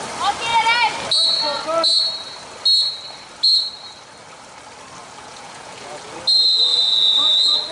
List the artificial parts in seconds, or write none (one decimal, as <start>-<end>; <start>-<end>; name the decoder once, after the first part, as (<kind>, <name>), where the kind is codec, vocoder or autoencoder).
5.0-6.1 (vocoder, Vocos); 6.7-7.3